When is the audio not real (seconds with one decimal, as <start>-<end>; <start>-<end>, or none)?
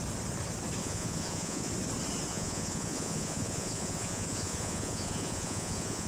0.8-1.7; 2.3-6.1